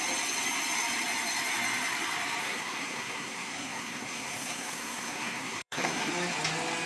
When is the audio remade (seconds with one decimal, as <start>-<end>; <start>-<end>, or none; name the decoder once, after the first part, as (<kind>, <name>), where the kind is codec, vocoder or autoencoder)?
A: 2.4-6.1 (codec, SNAC)